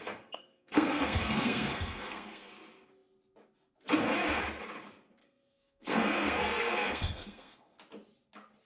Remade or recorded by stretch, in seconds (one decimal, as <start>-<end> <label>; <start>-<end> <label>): 0.0-2.5 remade; 2.5-5.2 recorded; 5.2-7.8 remade; 7.8-8.7 recorded